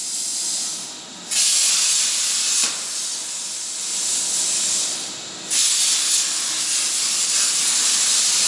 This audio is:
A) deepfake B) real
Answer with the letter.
B